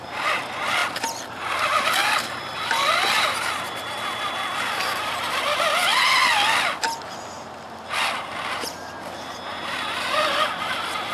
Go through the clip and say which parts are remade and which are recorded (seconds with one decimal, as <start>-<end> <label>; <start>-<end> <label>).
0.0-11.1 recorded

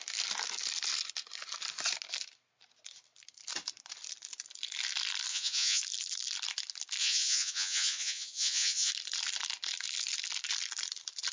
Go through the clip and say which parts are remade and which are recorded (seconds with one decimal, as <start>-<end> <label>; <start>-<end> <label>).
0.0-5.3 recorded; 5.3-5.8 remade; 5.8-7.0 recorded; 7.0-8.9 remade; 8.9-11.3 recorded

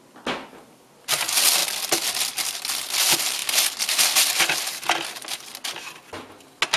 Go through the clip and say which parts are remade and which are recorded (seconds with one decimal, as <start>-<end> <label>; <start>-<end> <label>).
0.0-6.8 recorded